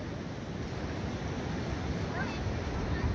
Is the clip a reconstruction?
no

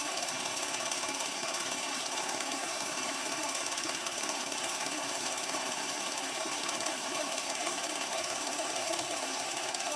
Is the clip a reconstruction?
yes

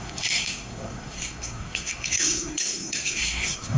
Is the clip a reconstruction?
yes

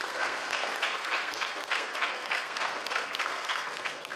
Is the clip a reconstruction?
yes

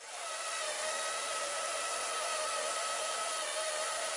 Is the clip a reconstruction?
no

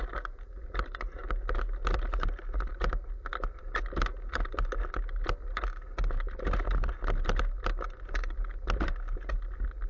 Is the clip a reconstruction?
no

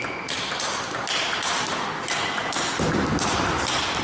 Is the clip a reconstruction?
no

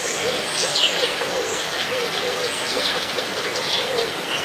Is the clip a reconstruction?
yes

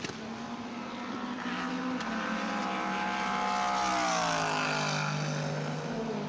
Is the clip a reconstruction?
no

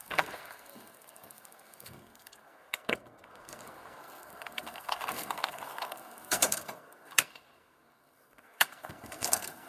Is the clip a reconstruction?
yes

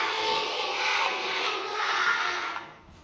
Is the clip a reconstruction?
yes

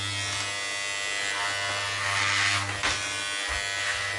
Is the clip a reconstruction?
no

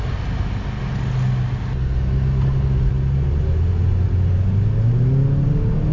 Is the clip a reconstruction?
no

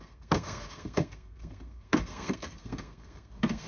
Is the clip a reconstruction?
yes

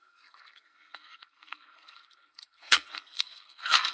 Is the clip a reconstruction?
yes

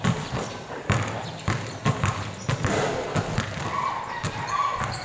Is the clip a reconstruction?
no